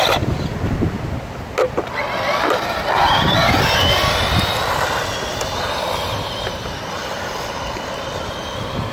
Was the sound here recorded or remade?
recorded